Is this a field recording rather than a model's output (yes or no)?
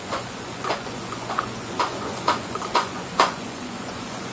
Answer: no